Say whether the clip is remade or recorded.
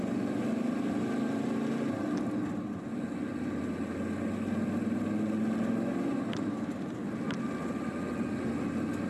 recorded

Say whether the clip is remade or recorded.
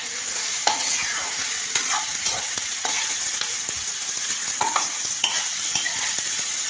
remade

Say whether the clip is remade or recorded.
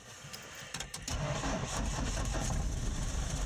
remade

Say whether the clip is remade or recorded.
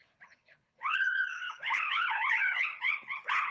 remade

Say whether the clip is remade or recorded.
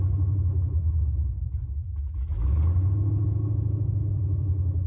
recorded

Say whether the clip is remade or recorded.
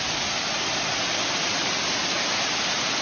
recorded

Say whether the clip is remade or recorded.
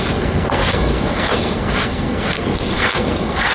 remade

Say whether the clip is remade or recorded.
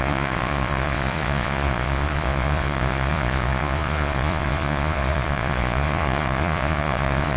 remade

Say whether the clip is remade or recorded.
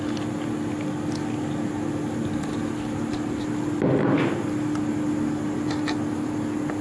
recorded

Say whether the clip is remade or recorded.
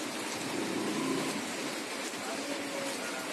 recorded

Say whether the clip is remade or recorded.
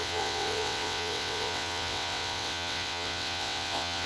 remade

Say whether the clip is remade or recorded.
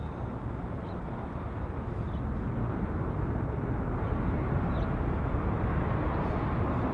recorded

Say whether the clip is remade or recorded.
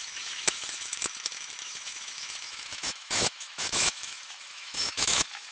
remade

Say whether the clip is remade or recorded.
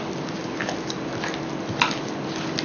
recorded